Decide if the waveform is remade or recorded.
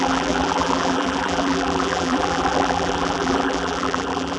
remade